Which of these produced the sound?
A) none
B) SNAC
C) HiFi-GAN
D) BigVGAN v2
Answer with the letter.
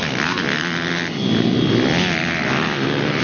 A